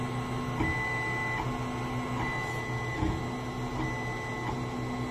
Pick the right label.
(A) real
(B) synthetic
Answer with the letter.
A